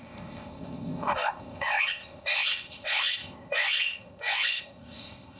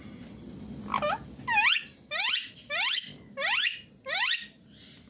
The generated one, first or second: first